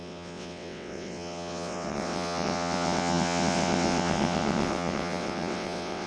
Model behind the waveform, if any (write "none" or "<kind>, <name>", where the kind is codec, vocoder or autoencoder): vocoder, WaveNeXt